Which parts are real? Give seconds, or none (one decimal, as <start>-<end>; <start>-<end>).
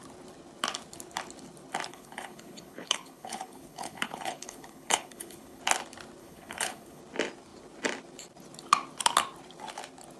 0.0-1.9; 5.6-6.2; 7.0-10.2